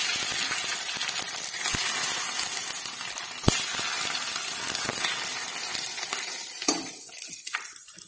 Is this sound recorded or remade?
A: recorded